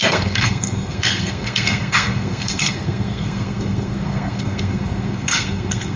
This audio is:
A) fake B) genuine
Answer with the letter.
A